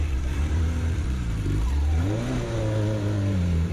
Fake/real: fake